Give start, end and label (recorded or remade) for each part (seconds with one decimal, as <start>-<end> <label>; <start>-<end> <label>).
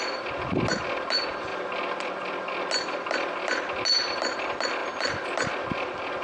0.0-4.8 recorded; 4.8-5.5 remade; 5.5-6.2 recorded